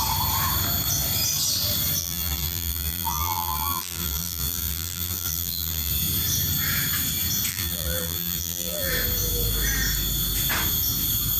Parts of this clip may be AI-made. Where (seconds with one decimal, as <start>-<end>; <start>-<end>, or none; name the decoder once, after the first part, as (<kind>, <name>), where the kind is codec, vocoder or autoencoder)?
2.0-5.9 (vocoder, BigVGAN v2); 7.5-8.9